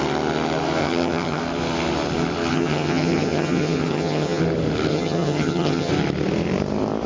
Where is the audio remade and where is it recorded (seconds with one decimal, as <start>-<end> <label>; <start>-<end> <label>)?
0.0-0.8 recorded; 0.8-1.4 remade; 1.4-2.5 recorded; 2.5-4.4 remade; 4.4-4.9 recorded; 4.9-5.9 remade; 5.9-7.1 recorded